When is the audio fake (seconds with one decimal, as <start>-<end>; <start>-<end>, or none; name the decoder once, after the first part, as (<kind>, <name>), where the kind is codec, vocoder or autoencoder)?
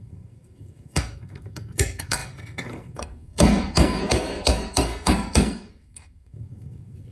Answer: 0.0-7.1 (codec, SNAC)